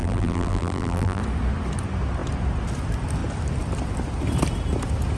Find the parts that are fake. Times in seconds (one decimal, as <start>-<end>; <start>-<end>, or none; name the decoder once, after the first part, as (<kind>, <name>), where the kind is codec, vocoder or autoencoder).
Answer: 0.0-1.2 (vocoder, BigVGAN v2)